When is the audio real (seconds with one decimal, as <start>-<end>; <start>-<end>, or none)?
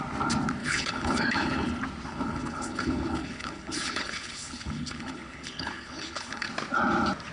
0.0-0.6; 1.7-2.1; 6.5-7.3